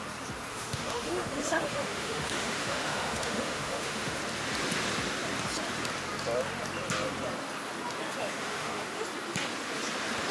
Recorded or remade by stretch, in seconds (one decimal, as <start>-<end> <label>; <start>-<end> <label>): 0.0-0.5 recorded; 0.5-4.2 remade; 4.2-8.2 recorded; 8.2-9.0 remade; 9.0-10.3 recorded